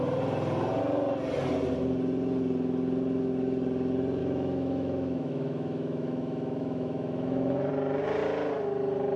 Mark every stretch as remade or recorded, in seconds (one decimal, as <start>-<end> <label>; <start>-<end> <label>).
0.0-4.2 recorded; 4.2-7.7 remade; 7.7-9.2 recorded